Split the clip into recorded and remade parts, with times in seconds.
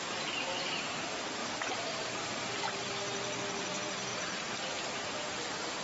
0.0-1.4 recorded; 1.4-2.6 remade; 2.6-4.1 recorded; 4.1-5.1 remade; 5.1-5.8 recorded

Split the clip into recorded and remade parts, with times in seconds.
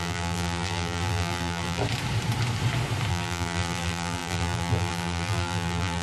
0.0-1.8 remade; 1.8-3.1 recorded; 3.1-6.0 remade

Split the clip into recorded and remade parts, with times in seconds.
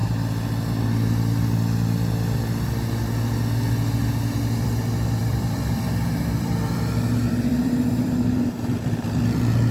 0.0-5.2 recorded; 5.2-9.7 remade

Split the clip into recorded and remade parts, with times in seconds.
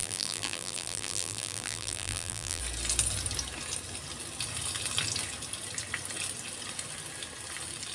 0.0-2.6 remade; 2.6-7.9 recorded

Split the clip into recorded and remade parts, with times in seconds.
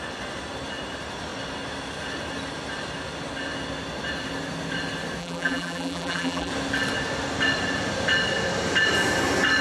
0.0-5.2 recorded; 5.2-6.5 remade; 6.5-9.6 recorded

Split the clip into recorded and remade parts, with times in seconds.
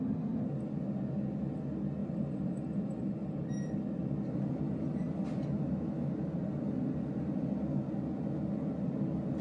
0.0-2.0 recorded; 2.0-5.6 remade; 5.6-9.4 recorded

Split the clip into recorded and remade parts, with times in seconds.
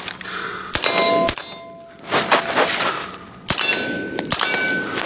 0.0-5.1 recorded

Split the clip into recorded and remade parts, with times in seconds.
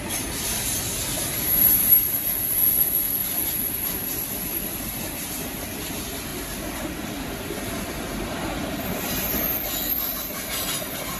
0.0-3.2 recorded; 3.2-5.0 remade; 5.0-11.2 recorded